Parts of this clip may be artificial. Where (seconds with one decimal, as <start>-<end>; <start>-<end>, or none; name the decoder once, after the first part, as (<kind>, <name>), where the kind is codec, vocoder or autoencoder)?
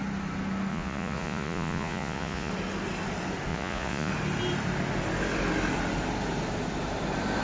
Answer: 0.7-2.5 (vocoder, Vocos); 3.5-4.1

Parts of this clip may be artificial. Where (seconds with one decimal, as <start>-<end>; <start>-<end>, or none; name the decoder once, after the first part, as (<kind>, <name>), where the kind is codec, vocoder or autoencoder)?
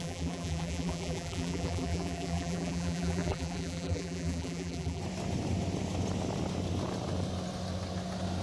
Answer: 0.0-5.0 (vocoder, BigVGAN v2)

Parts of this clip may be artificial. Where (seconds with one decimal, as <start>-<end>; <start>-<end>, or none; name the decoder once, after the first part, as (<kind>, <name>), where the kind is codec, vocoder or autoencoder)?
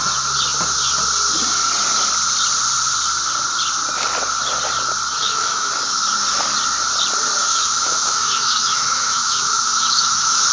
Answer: 5.2-5.7 (autoencoder, DAC-VAE); 7.5-10.5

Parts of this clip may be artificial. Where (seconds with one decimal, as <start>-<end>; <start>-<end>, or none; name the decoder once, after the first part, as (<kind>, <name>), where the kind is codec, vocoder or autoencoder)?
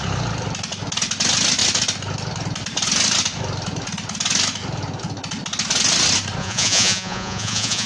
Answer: 6.4-7.9 (vocoder, Vocos)